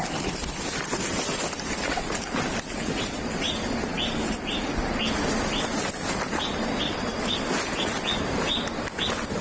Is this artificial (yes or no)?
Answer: no